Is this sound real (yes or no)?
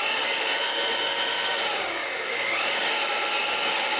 no